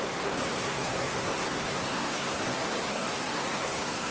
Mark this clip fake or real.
fake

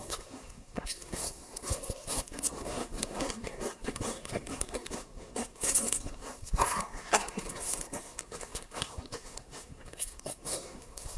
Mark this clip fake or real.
fake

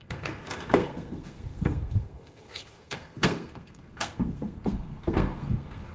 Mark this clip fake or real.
fake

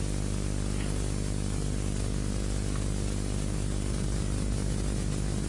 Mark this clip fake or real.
real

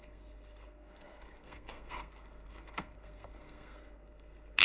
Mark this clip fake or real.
fake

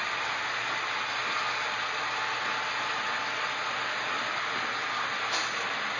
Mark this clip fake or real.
real